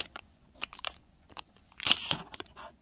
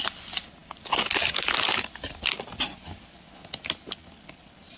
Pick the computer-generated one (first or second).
first